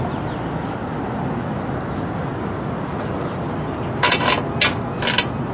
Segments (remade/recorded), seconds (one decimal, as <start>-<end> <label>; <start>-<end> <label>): 0.0-5.5 recorded